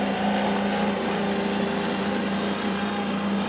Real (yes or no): yes